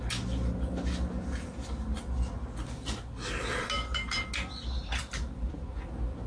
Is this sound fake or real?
real